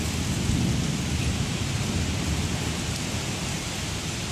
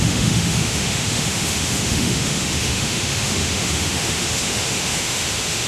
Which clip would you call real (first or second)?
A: first